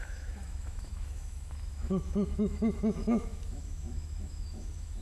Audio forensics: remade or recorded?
remade